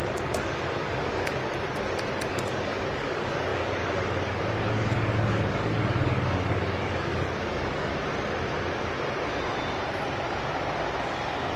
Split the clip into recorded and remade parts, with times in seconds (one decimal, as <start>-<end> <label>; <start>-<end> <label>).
0.0-1.4 remade; 1.4-2.3 recorded; 2.3-7.9 remade; 7.9-11.0 recorded; 11.0-11.6 remade